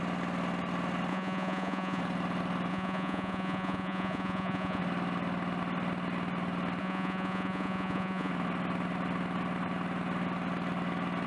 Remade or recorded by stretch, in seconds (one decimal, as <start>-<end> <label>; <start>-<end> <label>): 0.0-1.1 recorded; 1.1-2.0 remade; 2.0-2.7 recorded; 2.7-4.8 remade; 4.8-6.8 recorded; 6.8-8.3 remade; 8.3-11.3 recorded